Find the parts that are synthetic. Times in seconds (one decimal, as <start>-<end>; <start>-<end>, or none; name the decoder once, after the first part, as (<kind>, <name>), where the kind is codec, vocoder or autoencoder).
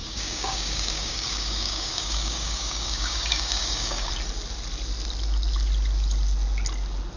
0.0-4.1 (codec, DAC)